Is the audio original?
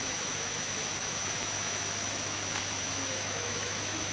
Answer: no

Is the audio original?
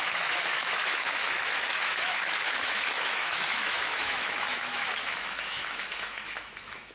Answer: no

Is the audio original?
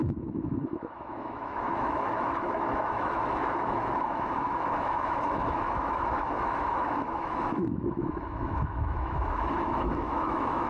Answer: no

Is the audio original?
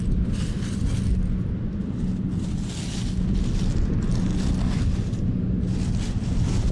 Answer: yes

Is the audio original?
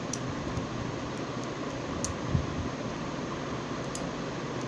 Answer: yes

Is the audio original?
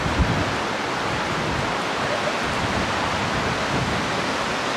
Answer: yes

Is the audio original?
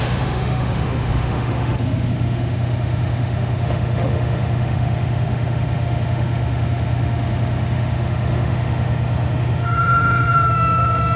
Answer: no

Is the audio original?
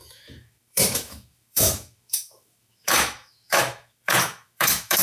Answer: no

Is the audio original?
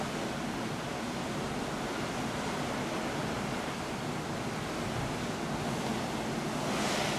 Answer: yes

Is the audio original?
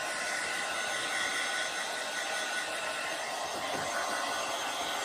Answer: yes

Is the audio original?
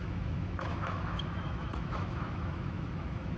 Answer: no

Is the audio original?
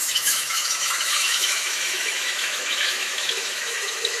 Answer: no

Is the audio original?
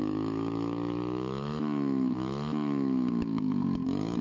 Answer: no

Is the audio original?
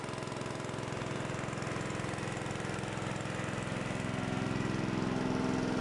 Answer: yes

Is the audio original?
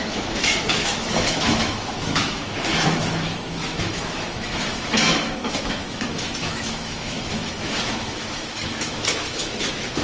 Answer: no